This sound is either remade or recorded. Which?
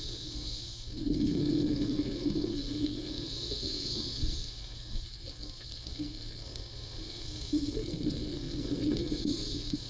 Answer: remade